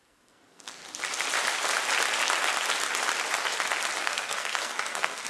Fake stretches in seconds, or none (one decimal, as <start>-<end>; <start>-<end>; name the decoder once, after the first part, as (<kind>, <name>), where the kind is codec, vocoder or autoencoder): 0.0-0.8 (codec, SNAC); 4.0-5.3